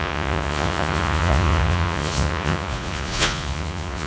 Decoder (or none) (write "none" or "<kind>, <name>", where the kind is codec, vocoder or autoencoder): vocoder, Vocos